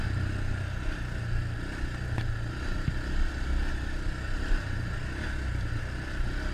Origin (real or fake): real